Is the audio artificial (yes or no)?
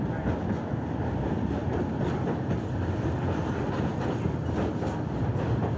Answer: no